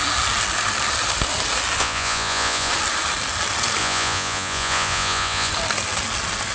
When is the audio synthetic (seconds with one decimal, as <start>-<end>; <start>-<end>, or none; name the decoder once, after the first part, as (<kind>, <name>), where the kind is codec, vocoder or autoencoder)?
1.8-2.7 (vocoder, Vocos); 3.8-5.5